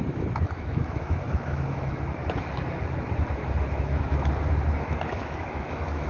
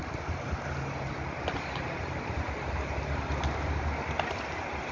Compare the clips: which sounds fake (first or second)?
first